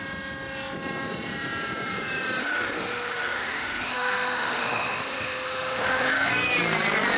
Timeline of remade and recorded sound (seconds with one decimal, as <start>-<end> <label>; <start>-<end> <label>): 0.0-2.4 recorded; 2.4-6.3 remade; 6.3-7.2 recorded